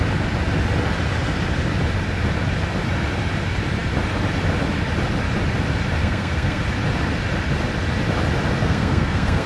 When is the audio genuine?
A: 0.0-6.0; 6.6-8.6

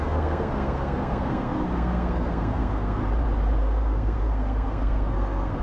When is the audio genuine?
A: 3.0-3.6

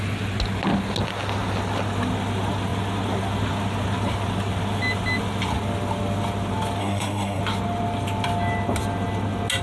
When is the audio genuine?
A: 0.0-6.8; 7.4-9.6

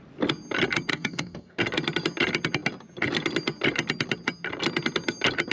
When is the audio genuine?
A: 0.0-0.9; 1.6-5.5

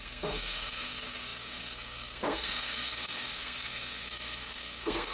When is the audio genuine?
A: none

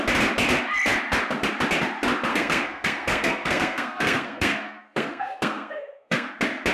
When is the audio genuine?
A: 0.0-2.3; 6.3-6.7

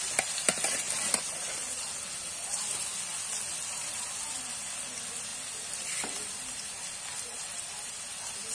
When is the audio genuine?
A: 0.0-8.5